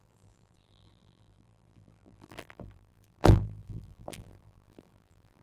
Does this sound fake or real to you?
fake